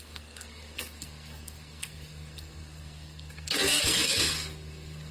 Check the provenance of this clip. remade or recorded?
remade